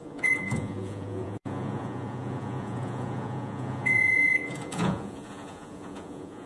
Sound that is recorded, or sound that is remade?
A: remade